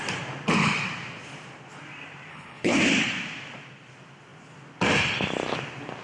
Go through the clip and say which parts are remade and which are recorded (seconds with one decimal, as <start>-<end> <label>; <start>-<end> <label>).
0.0-2.3 recorded; 2.3-2.8 remade; 2.8-6.0 recorded